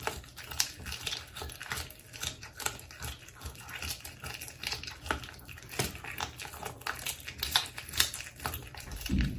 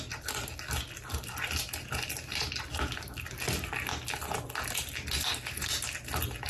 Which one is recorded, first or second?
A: second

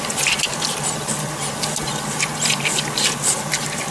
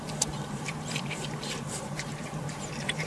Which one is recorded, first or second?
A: first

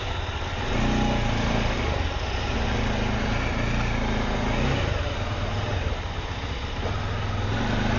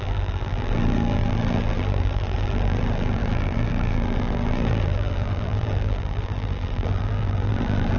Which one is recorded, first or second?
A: first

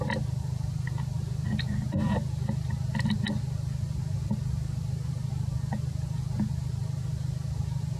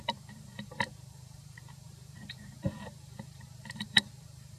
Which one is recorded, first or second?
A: first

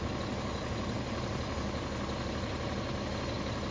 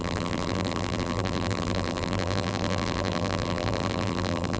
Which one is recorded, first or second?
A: first